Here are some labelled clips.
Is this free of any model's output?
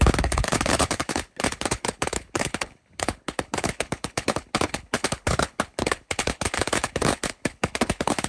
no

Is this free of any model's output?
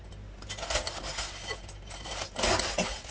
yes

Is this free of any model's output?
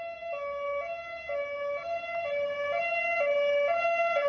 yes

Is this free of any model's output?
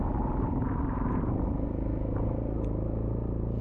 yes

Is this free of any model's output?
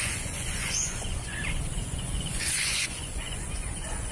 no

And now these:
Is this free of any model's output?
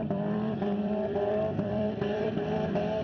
no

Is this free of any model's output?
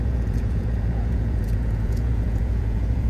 no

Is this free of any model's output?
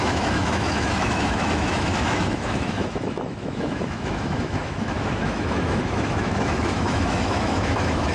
no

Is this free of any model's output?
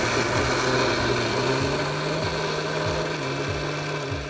yes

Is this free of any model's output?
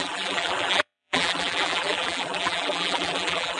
no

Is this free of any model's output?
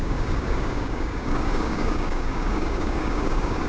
no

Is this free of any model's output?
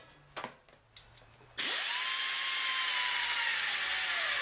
yes